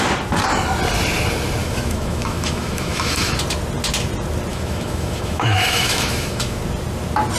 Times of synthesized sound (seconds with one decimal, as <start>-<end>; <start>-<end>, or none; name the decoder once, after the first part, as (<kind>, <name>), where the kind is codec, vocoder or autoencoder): 1.6-3.3 (autoencoder, DAC-VAE); 4.5-6.6

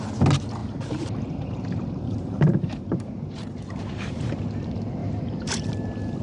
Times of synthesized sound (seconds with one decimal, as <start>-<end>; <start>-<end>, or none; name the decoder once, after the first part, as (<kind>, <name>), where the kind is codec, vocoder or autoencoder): 0.6-4.3 (vocoder, BigVGAN v2); 5.0-5.7